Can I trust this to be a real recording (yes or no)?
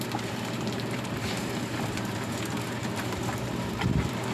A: no